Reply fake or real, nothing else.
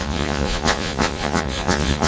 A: fake